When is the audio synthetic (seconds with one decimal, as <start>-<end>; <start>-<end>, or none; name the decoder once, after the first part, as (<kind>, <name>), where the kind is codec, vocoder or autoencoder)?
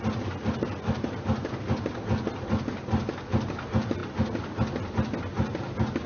none